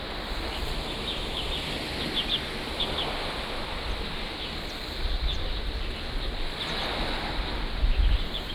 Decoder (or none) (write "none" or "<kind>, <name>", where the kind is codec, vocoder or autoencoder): none